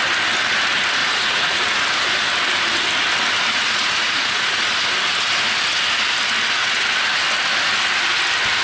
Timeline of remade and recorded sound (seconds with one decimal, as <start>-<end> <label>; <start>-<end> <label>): 0.0-1.0 recorded; 1.0-1.8 remade; 1.8-3.5 recorded; 3.5-4.6 remade; 4.6-6.6 recorded; 6.6-7.2 remade; 7.2-8.6 recorded